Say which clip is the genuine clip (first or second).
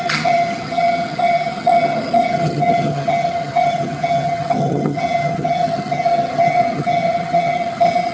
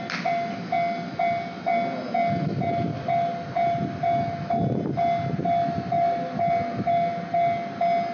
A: second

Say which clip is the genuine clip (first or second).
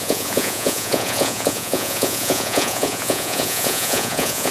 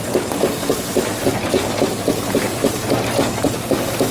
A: second